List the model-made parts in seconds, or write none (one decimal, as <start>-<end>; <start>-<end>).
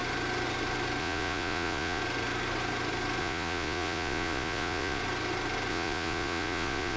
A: 1.0-2.0; 3.2-5.0; 5.7-7.0